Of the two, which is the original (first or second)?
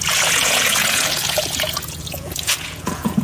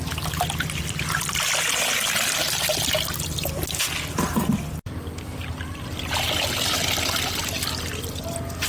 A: second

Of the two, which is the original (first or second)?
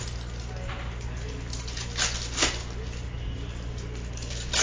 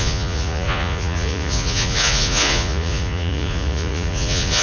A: first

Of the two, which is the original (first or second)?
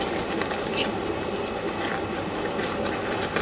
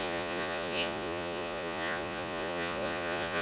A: first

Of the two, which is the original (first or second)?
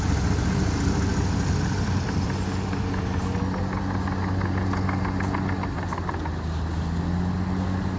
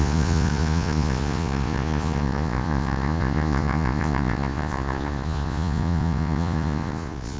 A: first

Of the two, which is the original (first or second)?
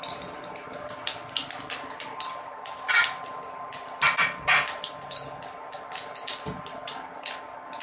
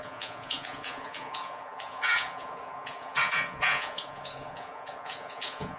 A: first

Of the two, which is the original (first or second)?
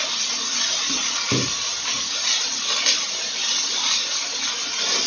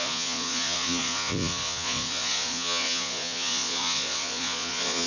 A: first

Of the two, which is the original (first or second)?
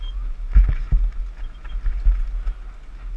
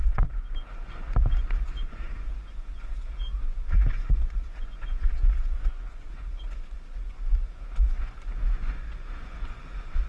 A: first